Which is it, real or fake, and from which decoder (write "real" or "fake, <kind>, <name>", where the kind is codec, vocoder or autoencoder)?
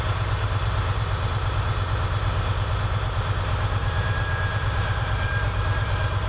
fake, vocoder, BigVGAN v2